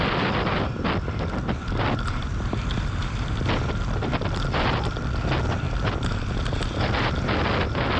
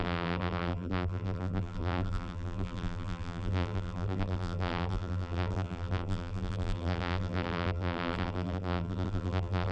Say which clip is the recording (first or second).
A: first